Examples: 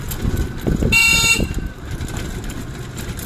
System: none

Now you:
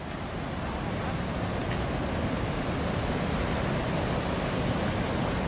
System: none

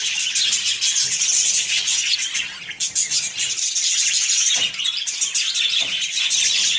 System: none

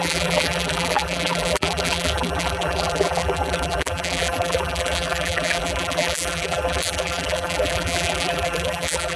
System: vocoder, BigVGAN v2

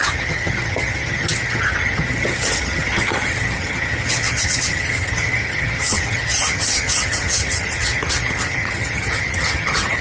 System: vocoder, HiFi-GAN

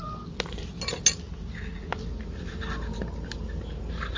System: none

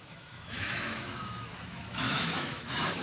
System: autoencoder, DAC-VAE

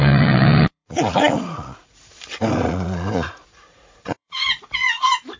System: vocoder, Vocos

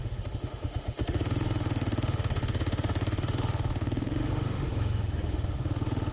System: autoencoder, DAC-VAE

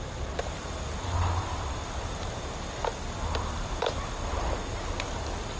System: none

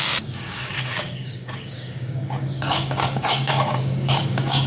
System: codec, DAC